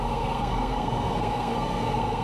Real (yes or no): no